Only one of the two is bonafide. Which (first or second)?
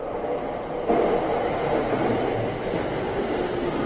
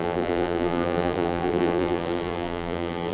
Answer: first